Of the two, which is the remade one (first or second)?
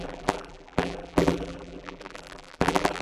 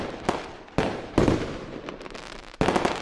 first